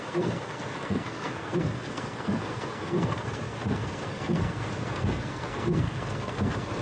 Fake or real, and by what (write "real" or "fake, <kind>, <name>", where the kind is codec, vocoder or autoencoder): fake, codec, SNAC